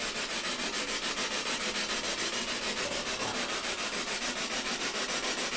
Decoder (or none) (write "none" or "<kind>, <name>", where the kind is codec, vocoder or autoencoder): none